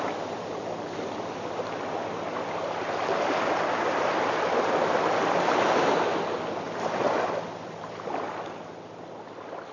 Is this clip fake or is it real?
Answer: real